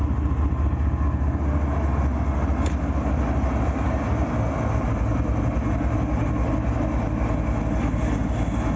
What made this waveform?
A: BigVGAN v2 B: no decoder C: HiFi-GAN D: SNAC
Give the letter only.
B